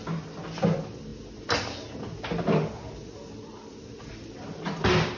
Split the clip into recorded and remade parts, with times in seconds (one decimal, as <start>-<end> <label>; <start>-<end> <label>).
0.0-5.2 recorded